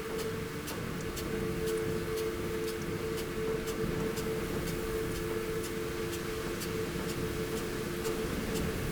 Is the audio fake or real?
real